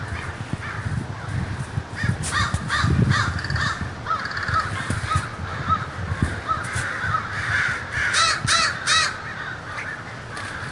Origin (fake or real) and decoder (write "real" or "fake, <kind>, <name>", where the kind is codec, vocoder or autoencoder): real